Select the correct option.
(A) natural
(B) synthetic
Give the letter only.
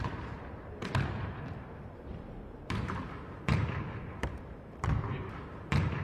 B